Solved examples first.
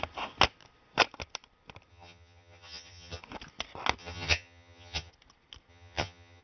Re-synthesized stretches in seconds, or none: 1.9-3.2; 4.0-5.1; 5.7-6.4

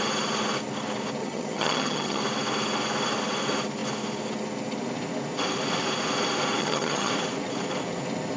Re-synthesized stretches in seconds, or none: 1.2-2.2; 6.6-7.1